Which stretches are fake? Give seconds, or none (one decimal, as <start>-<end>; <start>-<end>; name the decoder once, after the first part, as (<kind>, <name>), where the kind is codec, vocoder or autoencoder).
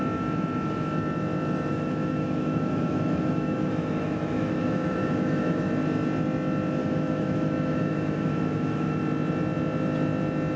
1.7-5.7 (autoencoder, DAC-VAE); 6.8-9.0